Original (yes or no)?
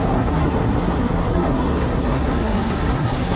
no